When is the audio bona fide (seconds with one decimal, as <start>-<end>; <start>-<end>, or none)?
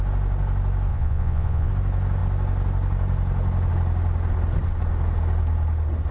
0.0-0.9; 1.7-6.1